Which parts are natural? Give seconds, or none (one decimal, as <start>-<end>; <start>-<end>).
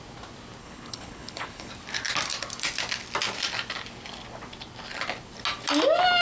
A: 0.0-0.6; 1.7-6.2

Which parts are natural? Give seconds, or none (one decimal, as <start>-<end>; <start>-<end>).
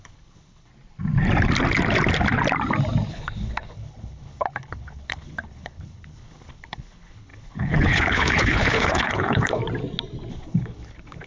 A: 0.7-3.1; 9.6-10.3